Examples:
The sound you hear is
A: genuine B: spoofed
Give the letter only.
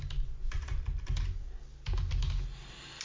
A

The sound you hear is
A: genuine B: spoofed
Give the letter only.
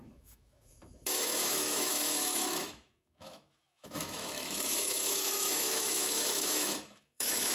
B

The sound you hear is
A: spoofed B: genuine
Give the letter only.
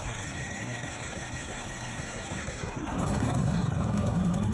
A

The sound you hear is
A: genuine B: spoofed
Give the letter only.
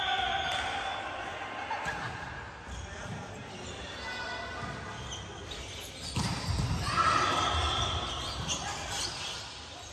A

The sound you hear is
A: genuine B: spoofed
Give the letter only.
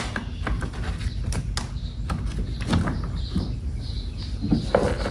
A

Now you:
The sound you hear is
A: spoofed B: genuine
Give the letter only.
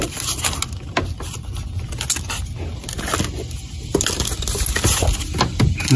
B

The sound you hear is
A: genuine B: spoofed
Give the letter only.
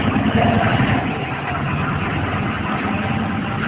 A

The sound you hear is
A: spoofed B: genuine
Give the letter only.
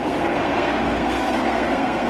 A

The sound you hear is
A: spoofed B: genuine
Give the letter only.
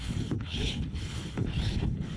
A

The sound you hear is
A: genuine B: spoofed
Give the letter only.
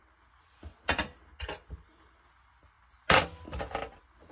A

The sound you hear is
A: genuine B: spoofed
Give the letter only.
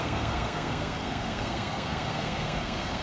B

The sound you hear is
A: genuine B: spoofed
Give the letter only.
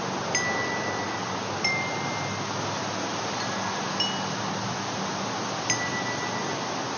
A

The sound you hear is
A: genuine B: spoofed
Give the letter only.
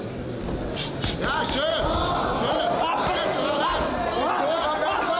A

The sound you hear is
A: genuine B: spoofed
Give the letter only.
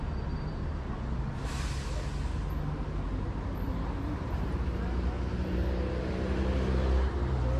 A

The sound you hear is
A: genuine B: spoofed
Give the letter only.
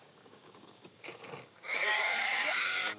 B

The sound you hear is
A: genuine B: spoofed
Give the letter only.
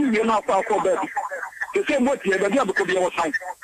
B